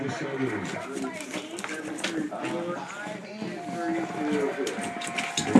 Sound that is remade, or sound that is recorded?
recorded